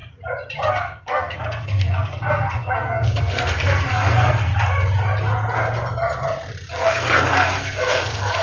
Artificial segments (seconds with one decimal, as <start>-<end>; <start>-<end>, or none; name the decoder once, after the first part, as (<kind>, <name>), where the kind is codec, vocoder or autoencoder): 0.7-4.5 (codec, SNAC); 6.7-8.4